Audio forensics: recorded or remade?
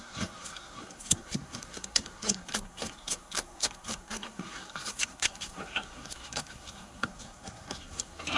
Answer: remade